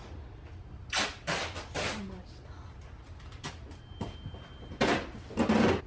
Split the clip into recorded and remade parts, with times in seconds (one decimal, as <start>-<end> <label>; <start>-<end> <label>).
0.0-5.9 recorded